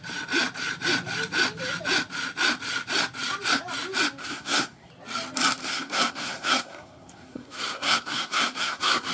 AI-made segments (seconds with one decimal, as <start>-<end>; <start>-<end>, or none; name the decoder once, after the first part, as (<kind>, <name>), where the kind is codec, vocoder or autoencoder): 4.2-4.9 (codec, SNAC); 5.6-9.1